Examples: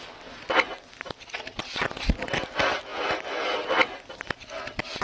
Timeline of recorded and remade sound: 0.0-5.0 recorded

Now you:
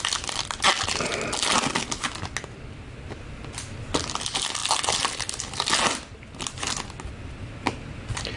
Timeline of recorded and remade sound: 0.0-8.4 recorded

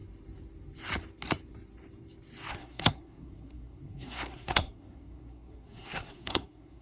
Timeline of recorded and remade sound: 0.0-2.5 recorded; 2.5-6.8 remade

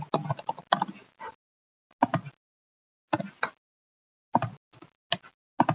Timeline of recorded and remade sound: 0.0-5.7 recorded

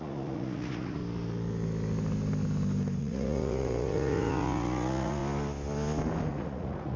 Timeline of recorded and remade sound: 0.0-1.0 remade; 1.0-3.0 recorded; 3.0-5.2 remade; 5.2-6.3 recorded; 6.3-7.0 remade

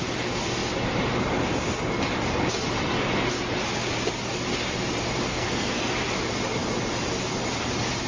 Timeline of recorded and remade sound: 0.0-5.3 recorded; 5.3-5.9 remade; 5.9-8.1 recorded